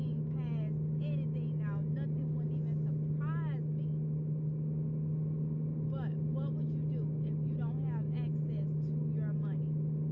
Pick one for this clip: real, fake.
real